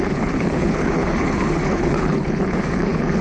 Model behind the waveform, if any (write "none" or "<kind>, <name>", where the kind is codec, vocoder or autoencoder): codec, HILCodec